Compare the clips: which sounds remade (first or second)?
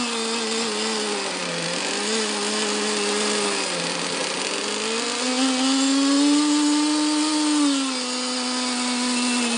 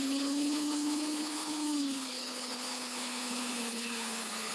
second